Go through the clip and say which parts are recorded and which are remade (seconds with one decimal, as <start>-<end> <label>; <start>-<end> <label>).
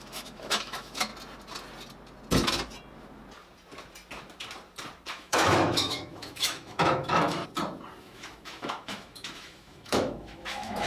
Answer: 0.0-1.1 remade; 1.1-5.1 recorded; 5.1-7.4 remade; 7.4-8.0 recorded; 8.0-10.9 remade